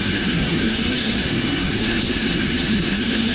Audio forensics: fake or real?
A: fake